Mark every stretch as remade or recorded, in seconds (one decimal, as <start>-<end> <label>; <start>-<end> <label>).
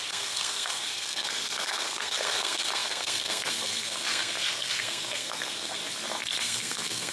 0.0-5.8 remade; 5.8-6.4 recorded; 6.4-7.1 remade